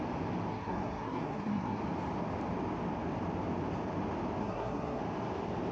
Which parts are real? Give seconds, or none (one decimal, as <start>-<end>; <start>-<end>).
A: 0.0-0.5; 1.8-4.4; 5.0-5.7